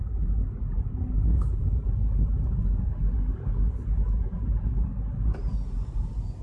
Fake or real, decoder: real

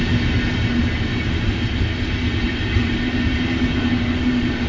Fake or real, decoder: real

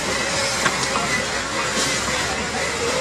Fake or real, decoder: real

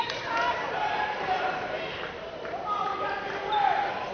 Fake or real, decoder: fake, vocoder, BigVGAN v2